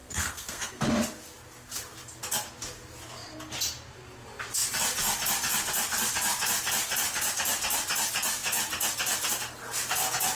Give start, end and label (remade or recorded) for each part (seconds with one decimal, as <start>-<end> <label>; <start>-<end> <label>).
0.0-0.9 remade; 0.9-10.3 recorded